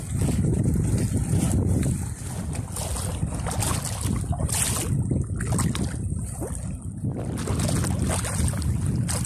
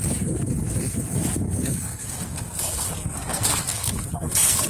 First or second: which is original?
first